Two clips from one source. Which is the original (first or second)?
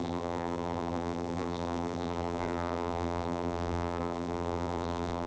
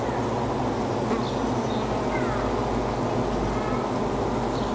second